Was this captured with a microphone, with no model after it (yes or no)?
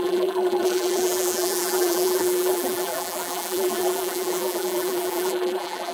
no